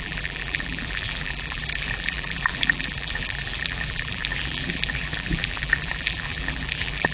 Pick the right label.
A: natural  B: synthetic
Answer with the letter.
B